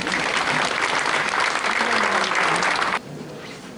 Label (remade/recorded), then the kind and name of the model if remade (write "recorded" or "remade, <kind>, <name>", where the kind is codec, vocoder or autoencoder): remade, vocoder, BigVGAN v2